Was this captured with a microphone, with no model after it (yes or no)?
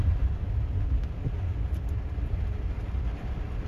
yes